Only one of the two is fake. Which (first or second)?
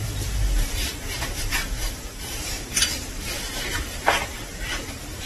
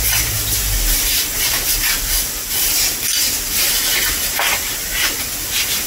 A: first